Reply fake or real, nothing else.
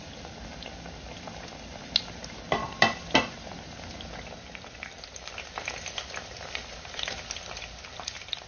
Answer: real